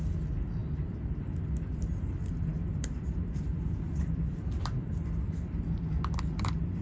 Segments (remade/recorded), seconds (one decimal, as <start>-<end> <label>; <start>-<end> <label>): 0.0-0.6 recorded; 0.6-1.2 remade; 1.2-2.5 recorded; 2.5-4.9 remade; 4.9-6.8 recorded